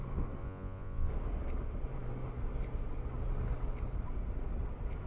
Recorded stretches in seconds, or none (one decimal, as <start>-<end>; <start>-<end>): 0.0-0.4; 1.1-5.1